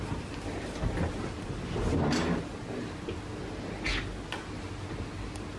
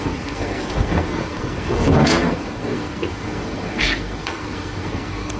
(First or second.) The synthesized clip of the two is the second